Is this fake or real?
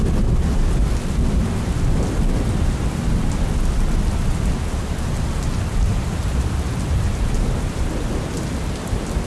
real